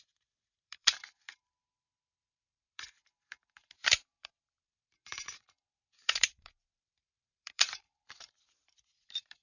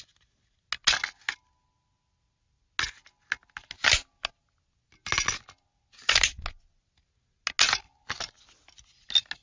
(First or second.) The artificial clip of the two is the first